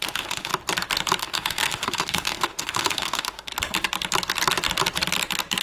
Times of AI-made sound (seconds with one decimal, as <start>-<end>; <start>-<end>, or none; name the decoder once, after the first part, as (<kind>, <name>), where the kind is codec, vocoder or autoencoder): 0.0-0.5 (autoencoder, DAC-VAE); 1.2-3.5